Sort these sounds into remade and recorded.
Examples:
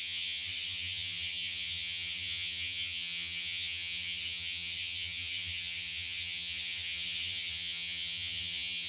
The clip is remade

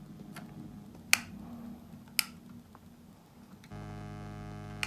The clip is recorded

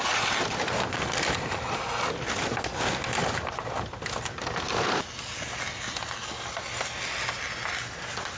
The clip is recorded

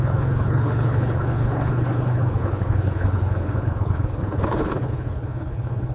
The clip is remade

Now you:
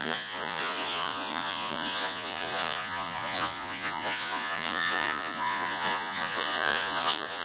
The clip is remade